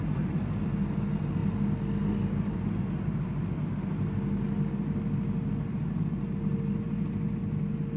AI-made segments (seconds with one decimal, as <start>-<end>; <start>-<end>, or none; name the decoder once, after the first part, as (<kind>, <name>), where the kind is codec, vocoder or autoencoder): none